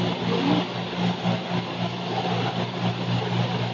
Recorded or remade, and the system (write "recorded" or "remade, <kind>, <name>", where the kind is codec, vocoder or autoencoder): recorded